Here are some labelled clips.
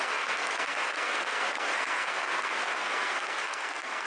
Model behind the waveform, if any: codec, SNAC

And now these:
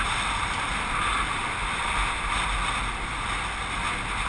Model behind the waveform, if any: none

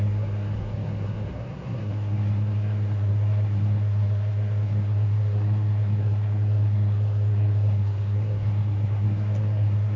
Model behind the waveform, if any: codec, SNAC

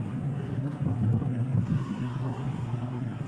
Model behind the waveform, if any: codec, SNAC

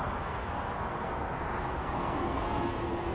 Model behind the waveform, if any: codec, SNAC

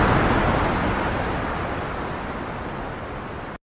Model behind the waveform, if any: none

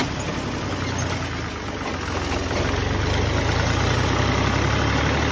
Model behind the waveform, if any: none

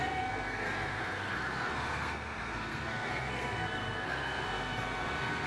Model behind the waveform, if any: codec, SNAC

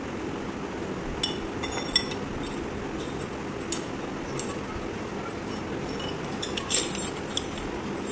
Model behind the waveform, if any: none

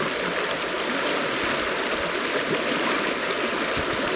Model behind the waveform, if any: none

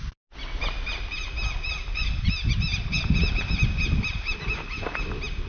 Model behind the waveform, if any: none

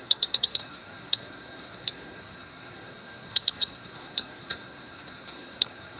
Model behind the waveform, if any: codec, SNAC